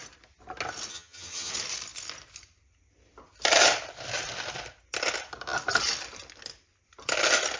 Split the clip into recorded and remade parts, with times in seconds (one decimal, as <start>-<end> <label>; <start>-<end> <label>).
0.0-0.9 recorded; 0.9-1.5 remade; 1.5-7.6 recorded